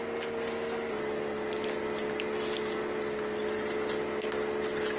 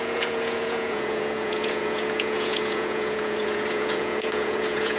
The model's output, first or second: second